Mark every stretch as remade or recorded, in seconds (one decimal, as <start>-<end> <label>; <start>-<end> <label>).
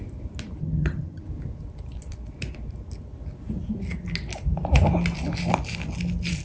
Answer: 0.0-0.6 recorded; 0.6-1.2 remade; 1.2-6.4 recorded